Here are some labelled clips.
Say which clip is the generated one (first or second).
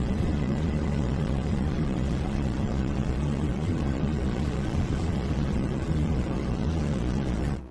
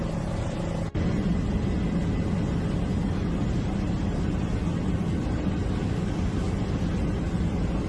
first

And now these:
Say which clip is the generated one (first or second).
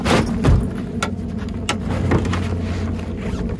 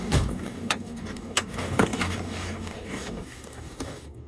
second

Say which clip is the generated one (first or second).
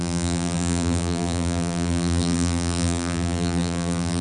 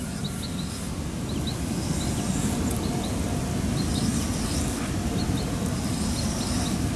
first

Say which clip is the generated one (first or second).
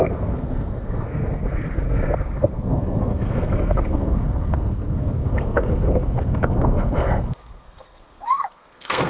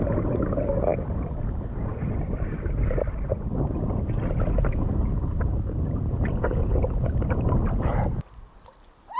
first